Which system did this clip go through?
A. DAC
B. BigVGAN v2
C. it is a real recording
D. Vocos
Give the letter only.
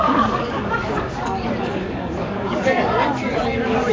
A